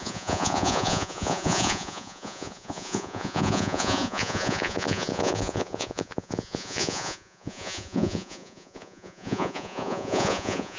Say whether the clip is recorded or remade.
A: remade